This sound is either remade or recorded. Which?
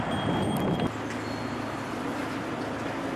recorded